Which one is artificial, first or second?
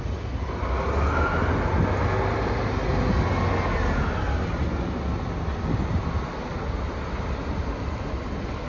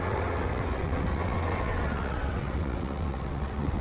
second